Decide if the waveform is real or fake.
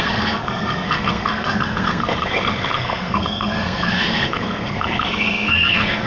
fake